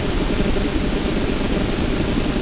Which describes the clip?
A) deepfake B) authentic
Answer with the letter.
B